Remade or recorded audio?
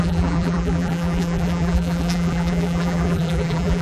remade